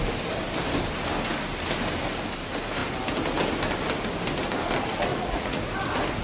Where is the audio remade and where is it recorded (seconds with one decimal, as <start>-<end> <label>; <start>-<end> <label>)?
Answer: 0.0-5.1 recorded; 5.1-5.6 remade; 5.6-6.2 recorded